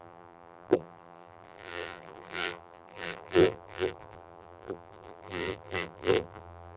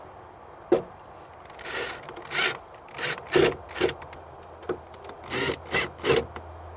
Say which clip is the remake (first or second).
first